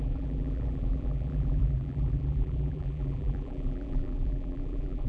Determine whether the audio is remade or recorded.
remade